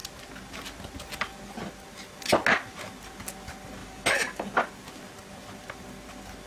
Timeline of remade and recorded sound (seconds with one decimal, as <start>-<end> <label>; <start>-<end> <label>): 0.0-3.8 recorded; 3.8-4.5 remade; 4.5-6.5 recorded